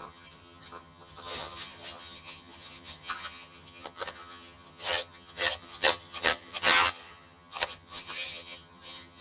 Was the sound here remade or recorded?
remade